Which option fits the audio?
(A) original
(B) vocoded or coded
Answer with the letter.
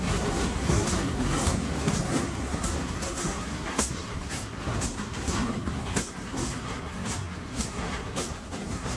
B